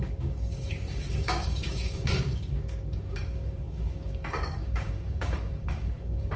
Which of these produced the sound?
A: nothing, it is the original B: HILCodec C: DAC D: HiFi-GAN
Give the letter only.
C